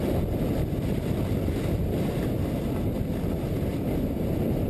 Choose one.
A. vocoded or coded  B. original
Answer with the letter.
B